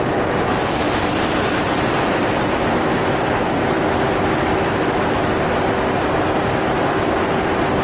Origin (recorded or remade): recorded